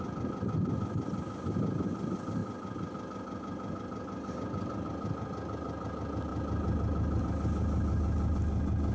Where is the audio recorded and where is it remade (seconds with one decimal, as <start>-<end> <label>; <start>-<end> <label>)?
0.0-8.9 recorded